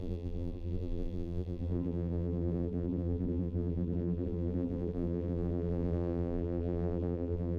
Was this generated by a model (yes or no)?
yes